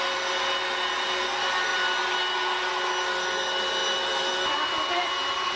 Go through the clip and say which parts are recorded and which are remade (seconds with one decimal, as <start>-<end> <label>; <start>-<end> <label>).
0.0-5.6 recorded